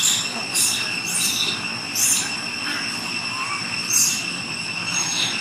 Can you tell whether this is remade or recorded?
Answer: remade